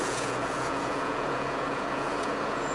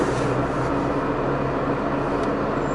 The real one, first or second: second